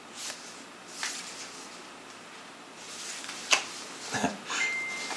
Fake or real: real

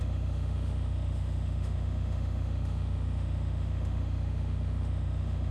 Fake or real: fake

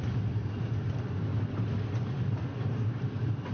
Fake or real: real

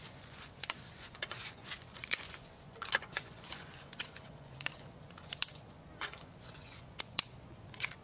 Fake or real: fake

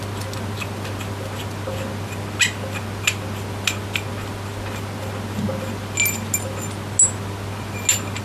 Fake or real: real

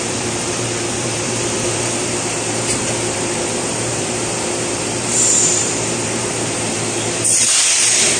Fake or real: fake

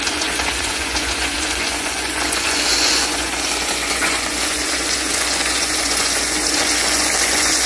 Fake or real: fake